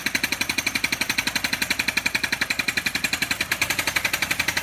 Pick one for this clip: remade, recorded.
recorded